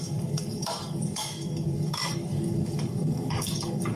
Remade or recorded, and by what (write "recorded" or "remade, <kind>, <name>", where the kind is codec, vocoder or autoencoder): remade, codec, DAC